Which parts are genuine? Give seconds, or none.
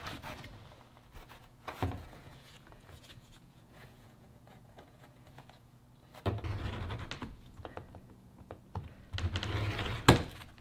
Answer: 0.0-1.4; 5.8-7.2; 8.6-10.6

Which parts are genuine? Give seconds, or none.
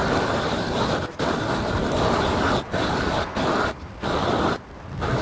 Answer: 0.0-5.2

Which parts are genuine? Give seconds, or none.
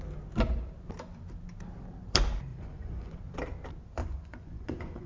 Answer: 0.0-2.5; 3.2-4.0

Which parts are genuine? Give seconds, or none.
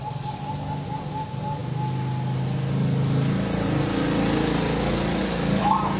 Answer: 0.0-6.0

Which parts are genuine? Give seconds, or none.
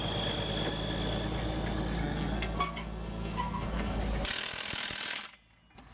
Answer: 0.0-2.0; 4.0-5.9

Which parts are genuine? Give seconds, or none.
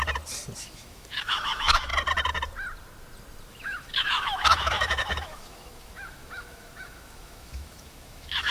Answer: 0.0-0.6; 1.9-3.5